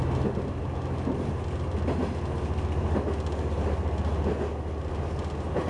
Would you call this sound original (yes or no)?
yes